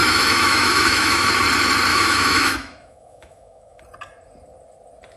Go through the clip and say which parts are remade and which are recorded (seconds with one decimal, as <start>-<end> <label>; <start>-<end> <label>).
0.0-1.3 remade; 1.3-1.9 recorded; 1.9-3.8 remade; 3.8-5.2 recorded